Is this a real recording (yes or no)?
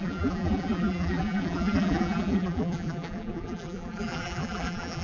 no